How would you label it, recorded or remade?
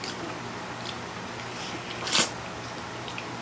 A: recorded